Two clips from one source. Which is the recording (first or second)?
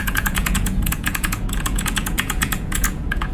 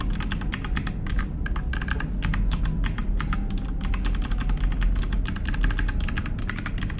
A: second